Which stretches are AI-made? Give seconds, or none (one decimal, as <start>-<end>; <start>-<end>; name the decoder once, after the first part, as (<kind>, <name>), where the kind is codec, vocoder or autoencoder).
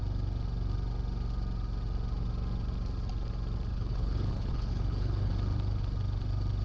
3.7-5.3 (codec, HILCodec)